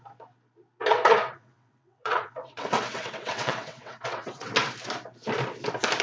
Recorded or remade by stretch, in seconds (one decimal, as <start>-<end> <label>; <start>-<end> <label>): 0.0-0.9 recorded; 0.9-4.5 remade; 4.5-6.0 recorded